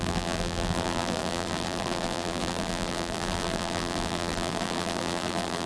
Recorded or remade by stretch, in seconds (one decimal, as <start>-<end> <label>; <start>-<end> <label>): 0.0-5.7 remade